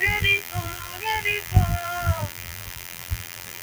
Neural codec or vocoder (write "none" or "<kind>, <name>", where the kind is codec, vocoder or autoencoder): vocoder, BigVGAN v2